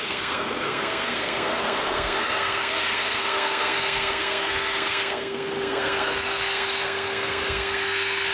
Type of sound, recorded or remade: remade